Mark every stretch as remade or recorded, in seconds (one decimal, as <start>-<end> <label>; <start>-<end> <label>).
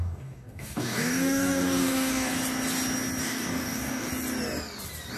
0.0-2.3 remade; 2.3-3.2 recorded; 3.2-4.1 remade; 4.1-5.2 recorded